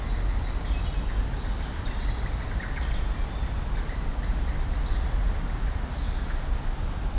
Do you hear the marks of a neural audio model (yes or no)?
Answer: no